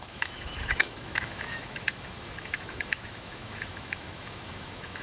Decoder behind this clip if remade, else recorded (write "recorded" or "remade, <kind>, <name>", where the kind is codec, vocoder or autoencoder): remade, autoencoder, DAC-VAE